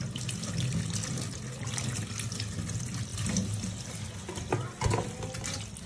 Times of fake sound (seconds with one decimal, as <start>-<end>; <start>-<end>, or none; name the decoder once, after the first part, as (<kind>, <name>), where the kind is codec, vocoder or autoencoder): none